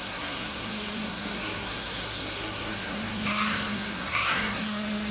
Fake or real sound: fake